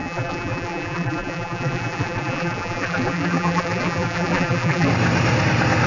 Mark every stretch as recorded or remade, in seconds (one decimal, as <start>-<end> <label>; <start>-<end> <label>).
0.0-4.9 remade; 4.9-5.9 recorded